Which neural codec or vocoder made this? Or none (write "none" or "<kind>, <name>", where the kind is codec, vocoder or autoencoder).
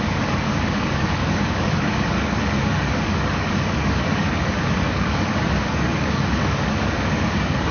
codec, DAC